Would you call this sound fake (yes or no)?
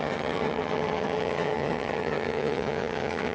yes